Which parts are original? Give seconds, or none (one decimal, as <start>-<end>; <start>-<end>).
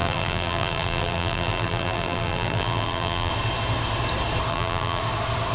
3.3-4.5; 5.0-5.5